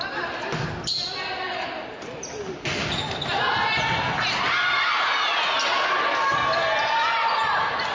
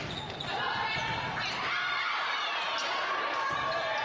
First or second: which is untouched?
first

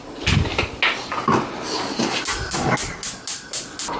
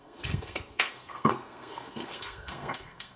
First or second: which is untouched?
first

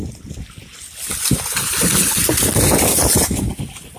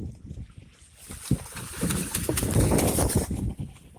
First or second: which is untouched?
first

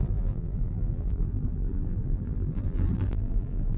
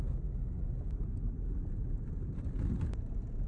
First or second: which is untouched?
second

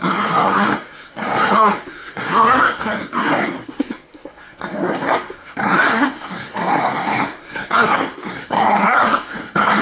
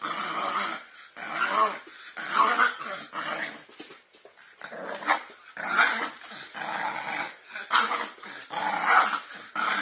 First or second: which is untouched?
second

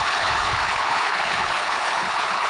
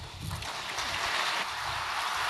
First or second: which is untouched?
second